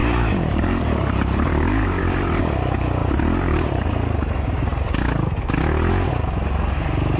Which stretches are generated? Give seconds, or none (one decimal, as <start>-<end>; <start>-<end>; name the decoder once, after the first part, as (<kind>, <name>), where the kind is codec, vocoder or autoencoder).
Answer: 0.0-2.4 (vocoder, BigVGAN v2); 3.0-3.8